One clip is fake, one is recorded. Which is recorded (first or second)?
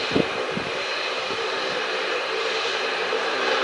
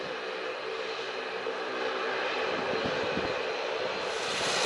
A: second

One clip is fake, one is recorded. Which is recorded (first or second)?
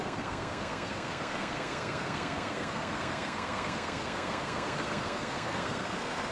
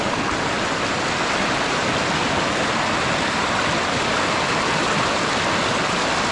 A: second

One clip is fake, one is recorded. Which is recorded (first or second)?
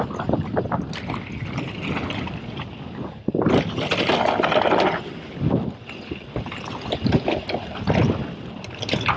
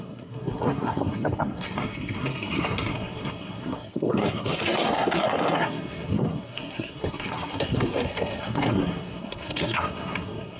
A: first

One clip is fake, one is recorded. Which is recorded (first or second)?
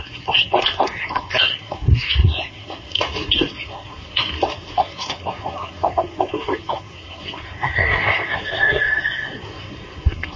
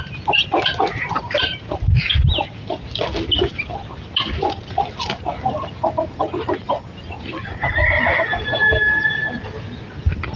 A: second